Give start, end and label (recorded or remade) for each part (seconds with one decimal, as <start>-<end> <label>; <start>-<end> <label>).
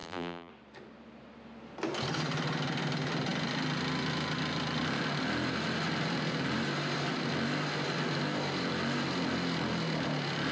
0.0-0.5 remade; 0.5-10.5 recorded